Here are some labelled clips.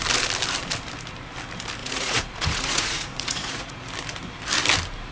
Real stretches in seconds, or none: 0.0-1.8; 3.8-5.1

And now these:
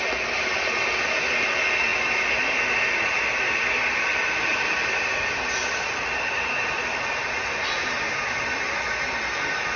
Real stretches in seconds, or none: 0.0-4.2; 8.7-9.8

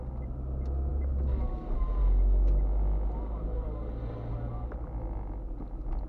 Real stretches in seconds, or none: 0.0-6.1

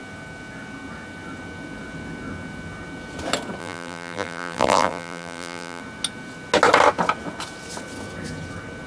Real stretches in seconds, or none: 0.0-3.6; 5.8-8.9

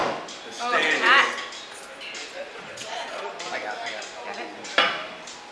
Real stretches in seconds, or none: 0.0-2.5; 3.3-5.5

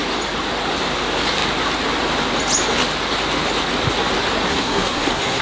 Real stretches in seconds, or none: 0.0-4.5

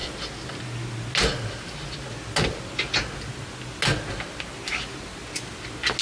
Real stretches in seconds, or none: 0.0-6.0